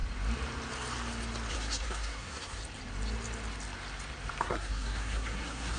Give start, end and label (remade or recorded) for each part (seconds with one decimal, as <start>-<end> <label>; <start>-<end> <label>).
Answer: 0.0-1.5 recorded; 1.5-2.6 remade; 2.6-4.4 recorded; 4.4-5.8 remade